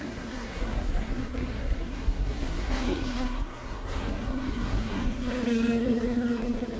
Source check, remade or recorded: remade